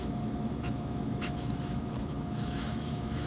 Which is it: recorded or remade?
remade